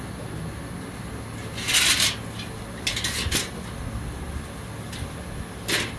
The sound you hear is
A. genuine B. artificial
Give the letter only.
A